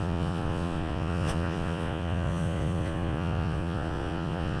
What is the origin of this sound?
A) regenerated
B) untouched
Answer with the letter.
A